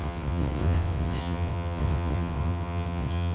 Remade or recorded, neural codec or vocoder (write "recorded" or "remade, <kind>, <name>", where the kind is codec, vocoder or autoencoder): remade, vocoder, WaveNeXt